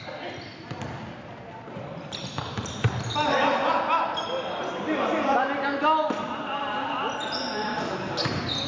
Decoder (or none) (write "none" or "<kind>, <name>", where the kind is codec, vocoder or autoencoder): none